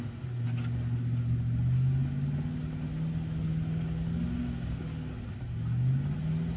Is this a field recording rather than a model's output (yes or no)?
yes